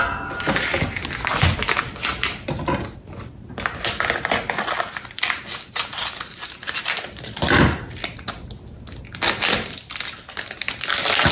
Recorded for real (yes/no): yes